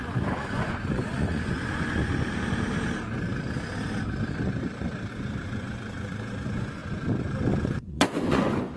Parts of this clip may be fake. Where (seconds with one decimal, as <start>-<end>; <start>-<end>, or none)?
0.0-2.0; 5.1-6.8; 7.5-8.8